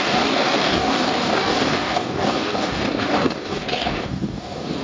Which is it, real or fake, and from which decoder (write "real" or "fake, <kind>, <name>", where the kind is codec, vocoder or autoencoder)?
fake, codec, DAC